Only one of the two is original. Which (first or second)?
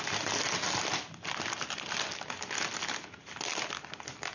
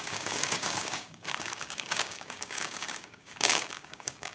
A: first